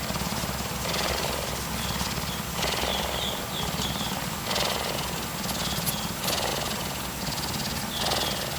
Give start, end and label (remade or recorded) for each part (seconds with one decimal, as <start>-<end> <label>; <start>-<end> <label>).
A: 0.0-8.6 recorded